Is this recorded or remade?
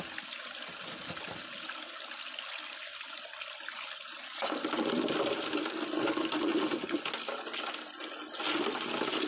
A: recorded